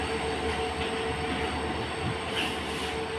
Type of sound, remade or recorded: recorded